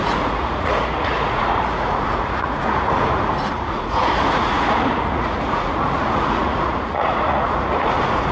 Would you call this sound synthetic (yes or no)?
yes